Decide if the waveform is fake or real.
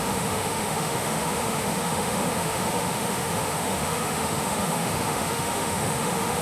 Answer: fake